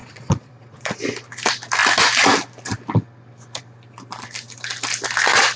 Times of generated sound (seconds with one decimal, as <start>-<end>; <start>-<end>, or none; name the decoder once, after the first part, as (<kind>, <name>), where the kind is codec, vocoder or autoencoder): 0.0-0.9 (vocoder, Vocos)